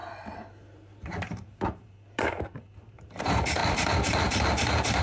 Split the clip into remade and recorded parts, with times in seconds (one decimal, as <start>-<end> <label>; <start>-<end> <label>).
0.0-5.0 remade